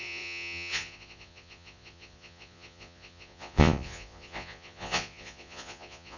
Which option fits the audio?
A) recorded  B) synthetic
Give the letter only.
B